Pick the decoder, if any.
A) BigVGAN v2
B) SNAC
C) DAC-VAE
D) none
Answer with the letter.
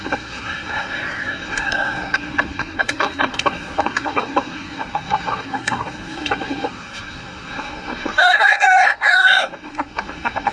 B